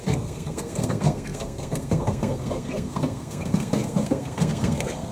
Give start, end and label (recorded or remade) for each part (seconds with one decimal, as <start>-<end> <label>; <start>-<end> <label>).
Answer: 0.0-5.1 remade